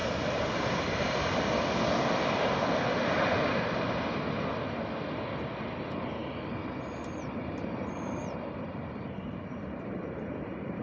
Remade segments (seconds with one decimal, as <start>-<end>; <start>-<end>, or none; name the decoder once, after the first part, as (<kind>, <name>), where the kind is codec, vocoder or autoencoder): 6.2-10.8 (vocoder, BigVGAN v2)